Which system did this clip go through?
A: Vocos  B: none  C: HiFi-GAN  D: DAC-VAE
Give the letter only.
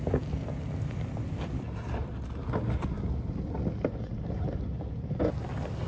B